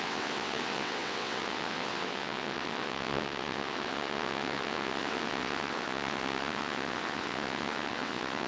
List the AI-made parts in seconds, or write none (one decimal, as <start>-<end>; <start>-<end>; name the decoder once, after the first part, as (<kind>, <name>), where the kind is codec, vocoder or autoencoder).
0.0-8.5 (vocoder, WaveNeXt)